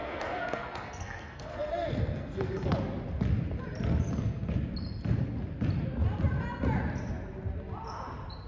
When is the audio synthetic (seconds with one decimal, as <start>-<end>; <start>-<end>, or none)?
0.0-2.7